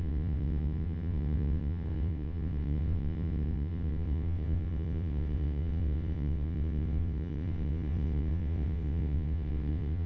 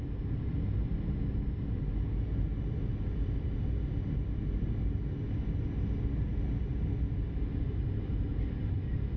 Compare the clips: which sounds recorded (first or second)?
second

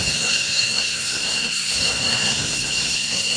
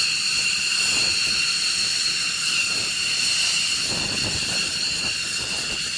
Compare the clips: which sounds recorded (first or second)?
second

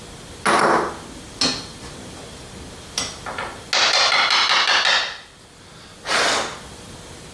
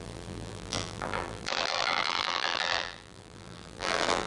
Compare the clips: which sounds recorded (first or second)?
first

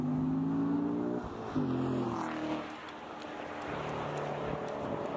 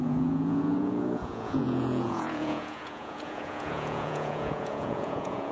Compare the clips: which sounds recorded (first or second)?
first